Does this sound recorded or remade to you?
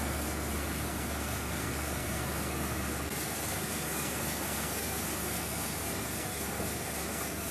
remade